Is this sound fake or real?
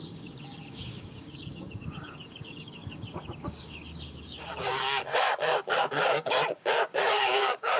fake